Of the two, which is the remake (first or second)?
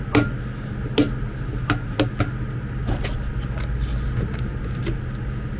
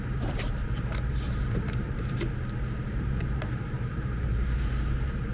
second